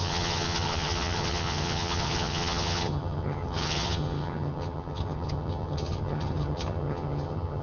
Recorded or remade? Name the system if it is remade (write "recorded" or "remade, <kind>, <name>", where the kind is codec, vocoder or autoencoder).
remade, vocoder, HiFi-GAN